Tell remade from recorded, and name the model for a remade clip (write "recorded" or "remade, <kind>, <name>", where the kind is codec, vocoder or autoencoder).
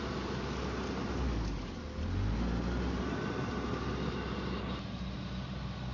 recorded